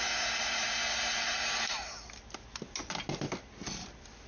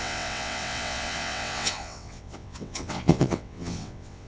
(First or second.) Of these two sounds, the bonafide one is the first